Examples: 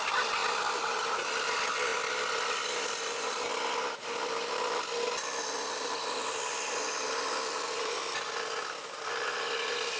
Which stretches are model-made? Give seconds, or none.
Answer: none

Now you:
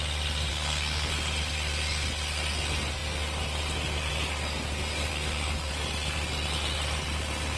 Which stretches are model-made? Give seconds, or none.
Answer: 0.5-1.1 (codec, SNAC); 5.1-5.7

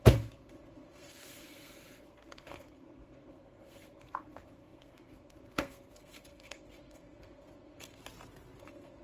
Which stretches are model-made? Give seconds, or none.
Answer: 0.0-8.0 (codec, SNAC); 8.6-9.0

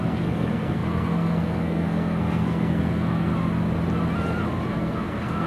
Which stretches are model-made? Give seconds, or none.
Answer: 0.0-3.3 (codec, SNAC); 4.7-5.5